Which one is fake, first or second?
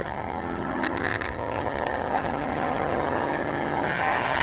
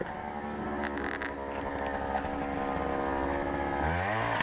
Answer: first